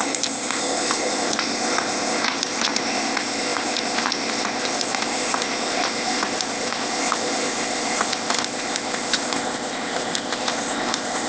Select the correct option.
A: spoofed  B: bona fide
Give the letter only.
A